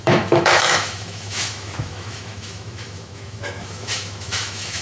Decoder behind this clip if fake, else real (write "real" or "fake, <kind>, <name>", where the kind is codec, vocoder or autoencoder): fake, autoencoder, DAC-VAE